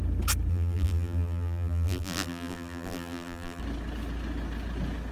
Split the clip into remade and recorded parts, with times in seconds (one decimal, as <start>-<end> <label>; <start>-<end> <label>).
0.0-0.5 recorded; 0.5-3.6 remade; 3.6-5.1 recorded